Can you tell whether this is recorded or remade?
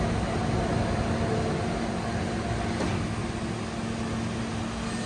recorded